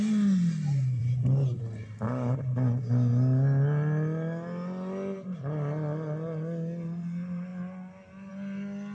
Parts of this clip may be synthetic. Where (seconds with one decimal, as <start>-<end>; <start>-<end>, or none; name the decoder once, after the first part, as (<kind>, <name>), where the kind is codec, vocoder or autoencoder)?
none